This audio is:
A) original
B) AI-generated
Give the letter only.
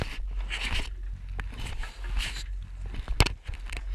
A